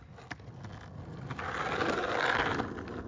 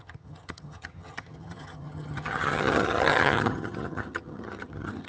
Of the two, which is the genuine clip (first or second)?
first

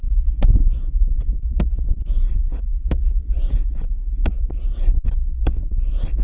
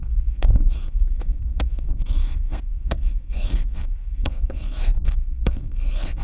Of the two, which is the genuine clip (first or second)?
first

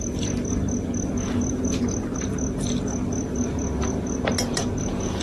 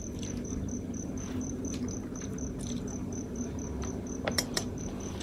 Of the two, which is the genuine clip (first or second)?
first